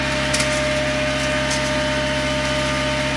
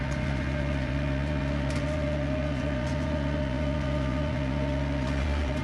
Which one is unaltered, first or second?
first